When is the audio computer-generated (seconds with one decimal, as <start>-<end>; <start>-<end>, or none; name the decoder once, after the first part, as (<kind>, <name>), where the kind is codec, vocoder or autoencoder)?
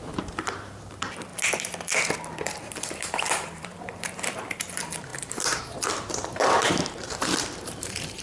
0.0-1.3 (vocoder, BigVGAN v2); 2.6-8.2